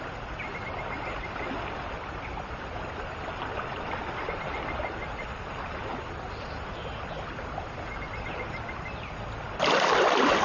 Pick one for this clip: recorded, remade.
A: recorded